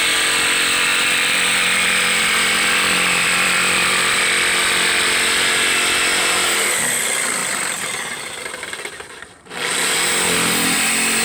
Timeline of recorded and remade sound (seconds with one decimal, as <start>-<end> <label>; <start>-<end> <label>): 0.0-0.9 recorded; 0.9-4.2 remade; 4.2-7.4 recorded; 7.4-9.5 remade; 9.5-11.2 recorded